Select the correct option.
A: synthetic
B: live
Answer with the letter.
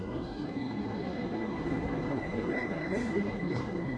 A